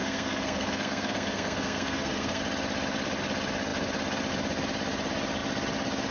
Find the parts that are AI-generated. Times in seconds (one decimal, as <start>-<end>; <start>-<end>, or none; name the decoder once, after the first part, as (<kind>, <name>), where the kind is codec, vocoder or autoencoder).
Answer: 0.0-2.4 (codec, SNAC)